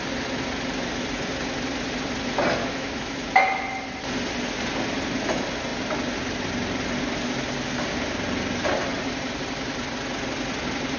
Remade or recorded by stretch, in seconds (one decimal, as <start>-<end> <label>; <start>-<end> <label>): 0.0-2.6 recorded; 2.6-3.3 remade; 3.3-11.0 recorded